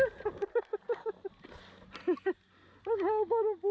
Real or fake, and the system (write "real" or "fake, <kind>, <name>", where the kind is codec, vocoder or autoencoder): real